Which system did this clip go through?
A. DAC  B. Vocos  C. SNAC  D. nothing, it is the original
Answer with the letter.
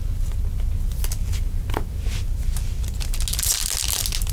D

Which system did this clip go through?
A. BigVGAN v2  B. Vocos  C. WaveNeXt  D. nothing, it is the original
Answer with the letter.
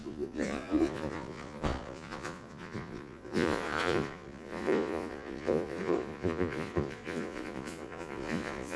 B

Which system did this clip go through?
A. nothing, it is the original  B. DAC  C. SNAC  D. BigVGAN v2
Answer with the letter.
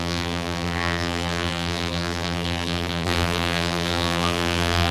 D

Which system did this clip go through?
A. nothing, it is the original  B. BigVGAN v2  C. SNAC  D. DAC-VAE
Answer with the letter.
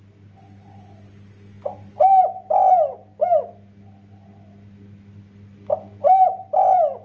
A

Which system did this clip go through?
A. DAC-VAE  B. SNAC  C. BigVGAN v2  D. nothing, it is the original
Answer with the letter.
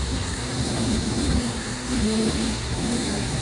B